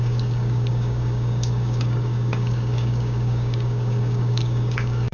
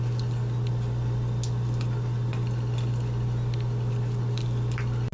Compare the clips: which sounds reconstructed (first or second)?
first